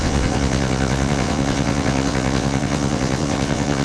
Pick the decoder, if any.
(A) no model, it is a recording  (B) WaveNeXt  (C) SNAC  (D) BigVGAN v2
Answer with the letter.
B